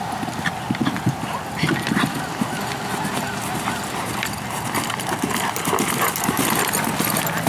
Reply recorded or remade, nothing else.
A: recorded